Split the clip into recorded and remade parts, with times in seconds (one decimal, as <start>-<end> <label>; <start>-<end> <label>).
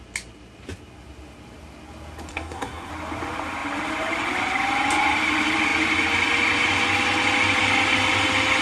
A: 0.0-2.3 recorded; 2.3-2.9 remade; 2.9-8.6 recorded